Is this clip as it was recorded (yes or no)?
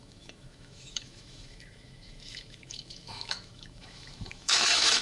no